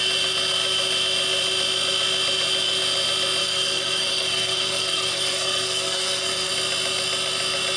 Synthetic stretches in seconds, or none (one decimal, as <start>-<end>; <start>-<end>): 3.4-6.5